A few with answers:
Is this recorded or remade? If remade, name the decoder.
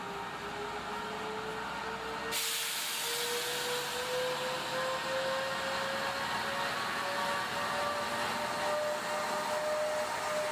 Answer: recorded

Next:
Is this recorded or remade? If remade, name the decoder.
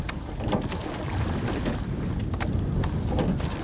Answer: recorded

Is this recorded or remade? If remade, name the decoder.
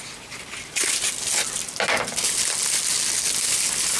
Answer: recorded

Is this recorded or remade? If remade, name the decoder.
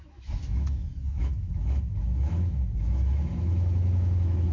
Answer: remade, autoencoder, DAC-VAE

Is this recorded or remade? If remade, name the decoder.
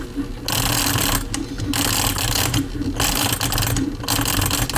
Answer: recorded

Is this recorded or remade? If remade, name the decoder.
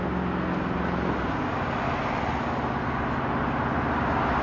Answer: recorded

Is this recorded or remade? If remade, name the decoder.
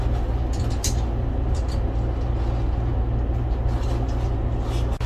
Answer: recorded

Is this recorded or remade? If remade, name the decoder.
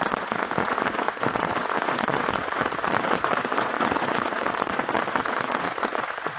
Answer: remade, vocoder, Vocos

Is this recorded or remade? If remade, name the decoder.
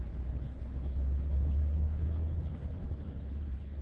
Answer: remade, codec, HILCodec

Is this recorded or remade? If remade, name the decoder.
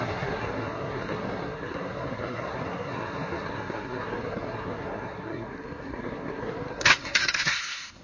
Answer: remade, codec, SNAC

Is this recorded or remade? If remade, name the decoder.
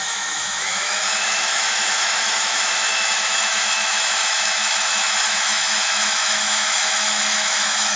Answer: remade, autoencoder, DAC-VAE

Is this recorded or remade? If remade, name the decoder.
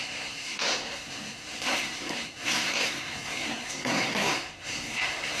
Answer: remade, codec, SNAC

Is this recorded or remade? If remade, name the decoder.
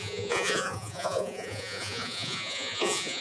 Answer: remade, vocoder, Vocos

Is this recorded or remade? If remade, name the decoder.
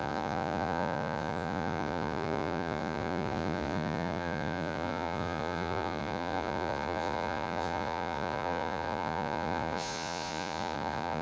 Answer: remade, vocoder, Vocos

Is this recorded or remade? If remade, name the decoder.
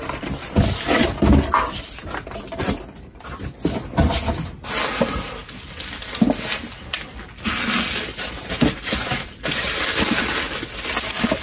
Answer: recorded